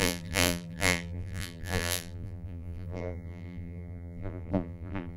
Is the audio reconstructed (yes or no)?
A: yes